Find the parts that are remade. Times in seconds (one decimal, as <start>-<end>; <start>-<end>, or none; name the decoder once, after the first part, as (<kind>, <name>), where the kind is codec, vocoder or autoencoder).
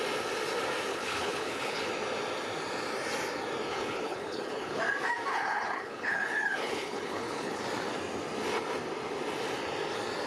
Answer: 0.9-1.9 (codec, HILCodec); 3.7-4.8; 5.3-7.6